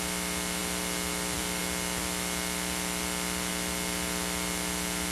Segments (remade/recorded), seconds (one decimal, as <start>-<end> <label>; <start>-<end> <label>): 0.0-5.1 recorded